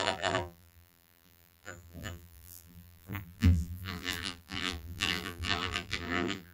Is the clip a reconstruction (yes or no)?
yes